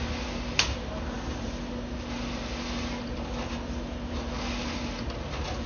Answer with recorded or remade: recorded